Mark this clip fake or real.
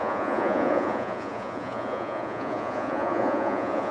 fake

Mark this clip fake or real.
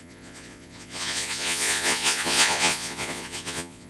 fake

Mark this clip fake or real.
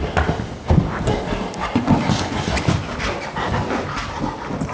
real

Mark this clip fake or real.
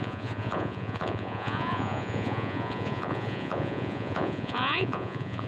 fake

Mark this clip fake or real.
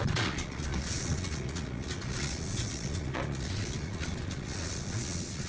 fake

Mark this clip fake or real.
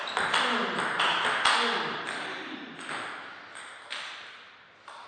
real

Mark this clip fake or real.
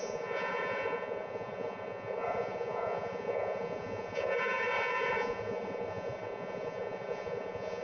fake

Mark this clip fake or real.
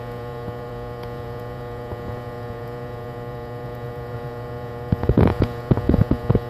fake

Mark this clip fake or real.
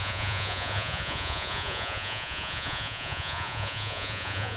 fake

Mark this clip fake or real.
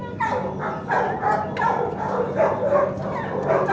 real